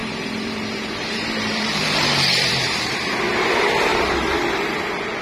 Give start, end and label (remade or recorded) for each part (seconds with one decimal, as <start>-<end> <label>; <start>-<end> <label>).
0.0-3.1 remade; 3.1-3.9 recorded; 3.9-4.8 remade; 4.8-5.2 recorded